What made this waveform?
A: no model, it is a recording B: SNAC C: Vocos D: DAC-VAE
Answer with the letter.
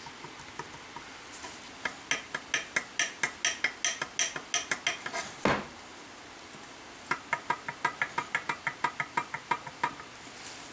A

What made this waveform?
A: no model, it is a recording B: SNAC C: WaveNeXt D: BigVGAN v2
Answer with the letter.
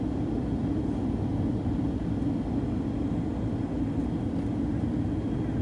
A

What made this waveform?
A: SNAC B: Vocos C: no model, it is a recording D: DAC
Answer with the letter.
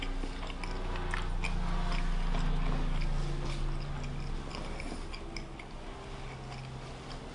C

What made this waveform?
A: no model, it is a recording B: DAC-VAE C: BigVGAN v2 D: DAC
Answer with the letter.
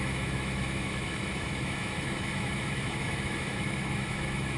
B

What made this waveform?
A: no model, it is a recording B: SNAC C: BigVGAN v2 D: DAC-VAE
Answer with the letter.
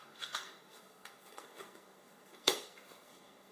B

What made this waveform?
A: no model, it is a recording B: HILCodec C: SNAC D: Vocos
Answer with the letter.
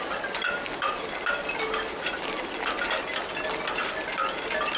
A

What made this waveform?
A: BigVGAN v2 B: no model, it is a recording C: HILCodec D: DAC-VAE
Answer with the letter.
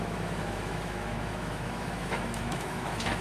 D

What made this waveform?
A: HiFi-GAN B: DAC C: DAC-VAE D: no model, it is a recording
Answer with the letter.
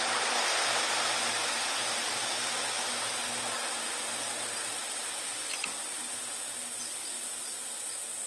D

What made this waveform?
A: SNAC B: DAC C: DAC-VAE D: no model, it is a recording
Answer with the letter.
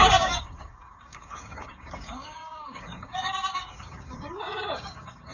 B